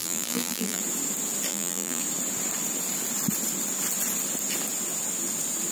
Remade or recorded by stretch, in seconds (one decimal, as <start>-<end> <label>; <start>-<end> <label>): 0.0-0.8 remade; 0.8-1.5 recorded; 1.5-2.0 remade; 2.0-5.7 recorded